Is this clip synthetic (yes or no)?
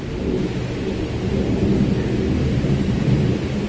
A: no